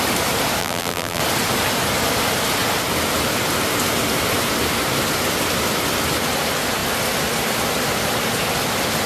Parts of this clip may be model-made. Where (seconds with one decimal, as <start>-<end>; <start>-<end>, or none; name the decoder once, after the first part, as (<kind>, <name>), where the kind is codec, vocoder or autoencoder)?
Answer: 0.6-1.2 (vocoder, BigVGAN v2)